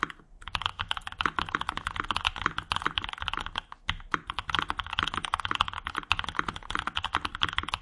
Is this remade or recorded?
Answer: recorded